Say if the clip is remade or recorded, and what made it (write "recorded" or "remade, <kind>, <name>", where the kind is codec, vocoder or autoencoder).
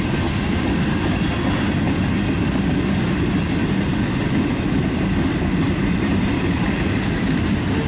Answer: recorded